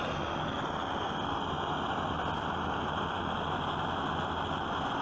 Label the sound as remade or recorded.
recorded